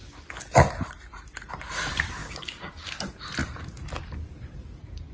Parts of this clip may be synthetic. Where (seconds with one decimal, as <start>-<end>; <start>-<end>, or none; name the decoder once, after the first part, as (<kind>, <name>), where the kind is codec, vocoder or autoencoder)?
2.2-3.0 (codec, DAC)